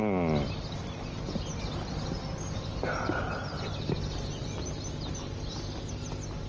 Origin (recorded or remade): recorded